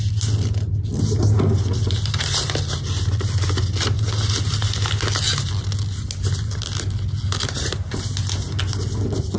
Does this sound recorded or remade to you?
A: recorded